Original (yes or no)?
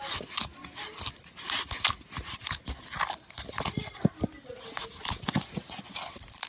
yes